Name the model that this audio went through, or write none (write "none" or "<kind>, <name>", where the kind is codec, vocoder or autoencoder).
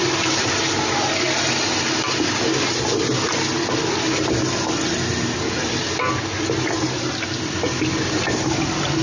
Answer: none